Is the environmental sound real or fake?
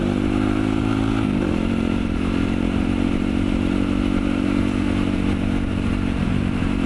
fake